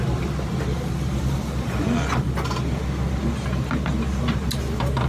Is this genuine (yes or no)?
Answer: yes